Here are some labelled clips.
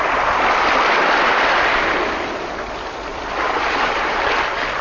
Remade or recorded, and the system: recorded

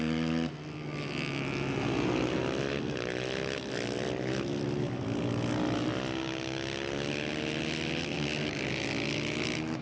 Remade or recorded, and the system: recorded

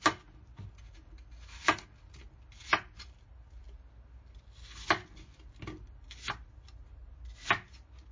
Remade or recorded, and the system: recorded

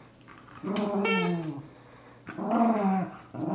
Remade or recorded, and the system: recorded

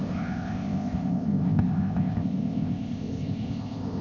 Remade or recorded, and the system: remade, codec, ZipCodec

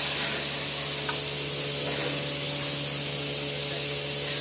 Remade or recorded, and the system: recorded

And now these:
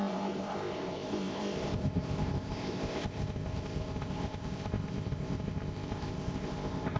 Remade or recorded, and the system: remade, codec, ZipCodec